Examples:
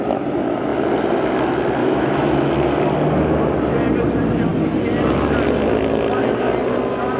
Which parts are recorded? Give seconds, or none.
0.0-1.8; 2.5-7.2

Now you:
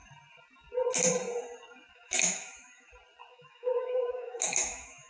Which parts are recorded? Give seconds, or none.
0.0-1.9; 2.9-3.3

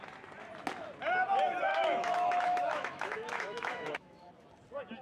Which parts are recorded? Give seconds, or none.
0.0-1.7; 4.3-5.0

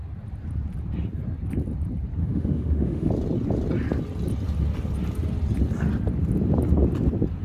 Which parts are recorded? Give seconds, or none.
0.0-2.2; 3.1-7.4